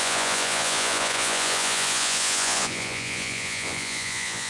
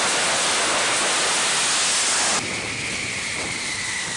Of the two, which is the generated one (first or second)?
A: first